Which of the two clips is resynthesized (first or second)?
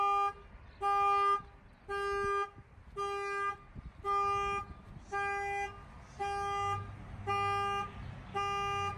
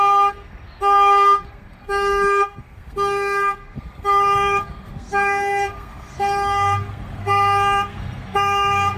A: second